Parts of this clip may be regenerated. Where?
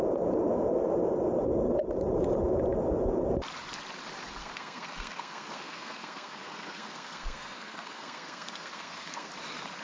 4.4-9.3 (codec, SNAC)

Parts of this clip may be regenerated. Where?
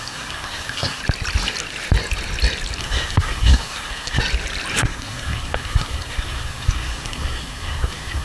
0.0-1.0 (codec, SNAC); 2.8-4.2; 4.8-8.2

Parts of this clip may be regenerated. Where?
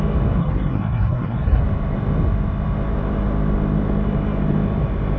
0.4-1.6 (codec, SNAC)